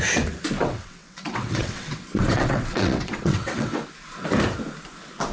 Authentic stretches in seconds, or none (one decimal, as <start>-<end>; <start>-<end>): 0.0-0.6; 3.8-5.3